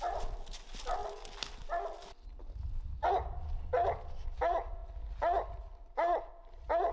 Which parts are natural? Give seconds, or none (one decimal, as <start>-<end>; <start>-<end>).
0.0-6.9